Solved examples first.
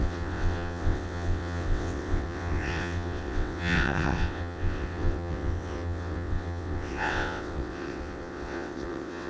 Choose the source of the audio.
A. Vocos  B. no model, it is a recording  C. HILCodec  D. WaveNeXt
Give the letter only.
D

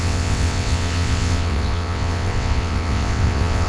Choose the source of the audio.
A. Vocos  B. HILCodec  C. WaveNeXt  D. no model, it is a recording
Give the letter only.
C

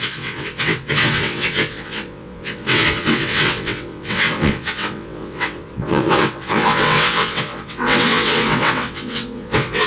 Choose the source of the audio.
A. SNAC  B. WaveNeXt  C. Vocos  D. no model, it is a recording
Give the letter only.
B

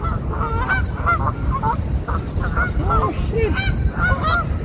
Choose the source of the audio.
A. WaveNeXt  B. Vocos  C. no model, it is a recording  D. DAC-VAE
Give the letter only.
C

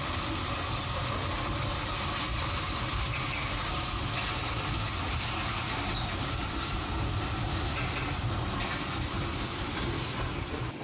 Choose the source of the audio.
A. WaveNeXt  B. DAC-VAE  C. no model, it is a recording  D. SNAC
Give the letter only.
C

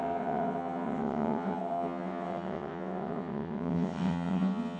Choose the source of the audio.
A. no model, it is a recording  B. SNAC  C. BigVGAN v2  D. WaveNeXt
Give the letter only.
D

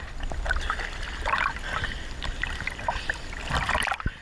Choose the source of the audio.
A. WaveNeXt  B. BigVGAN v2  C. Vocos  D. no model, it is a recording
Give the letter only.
D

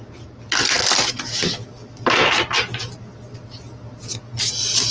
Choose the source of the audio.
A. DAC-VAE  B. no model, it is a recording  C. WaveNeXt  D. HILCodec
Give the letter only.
B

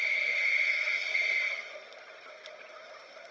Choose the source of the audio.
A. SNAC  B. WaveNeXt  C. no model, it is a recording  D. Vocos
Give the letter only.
C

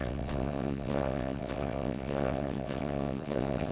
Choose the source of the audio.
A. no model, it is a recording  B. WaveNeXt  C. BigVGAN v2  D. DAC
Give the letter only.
B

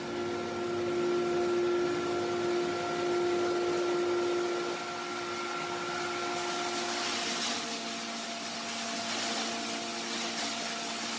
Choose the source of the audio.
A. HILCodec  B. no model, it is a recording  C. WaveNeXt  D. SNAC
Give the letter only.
B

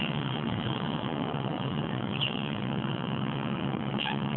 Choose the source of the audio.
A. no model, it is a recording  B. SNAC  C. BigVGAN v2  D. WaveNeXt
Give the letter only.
D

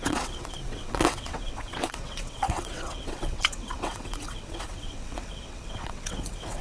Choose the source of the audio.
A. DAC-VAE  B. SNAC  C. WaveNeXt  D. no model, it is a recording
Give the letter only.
C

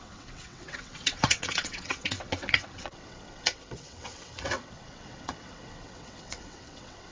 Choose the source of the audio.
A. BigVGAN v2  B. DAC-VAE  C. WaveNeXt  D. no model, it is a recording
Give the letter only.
C